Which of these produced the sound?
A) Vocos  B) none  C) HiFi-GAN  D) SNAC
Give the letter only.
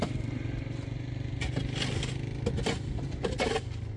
B